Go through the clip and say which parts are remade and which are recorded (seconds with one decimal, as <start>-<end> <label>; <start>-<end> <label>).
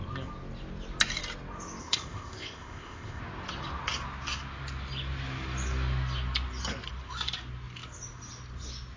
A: 0.0-1.8 recorded; 1.8-3.2 remade; 3.2-9.0 recorded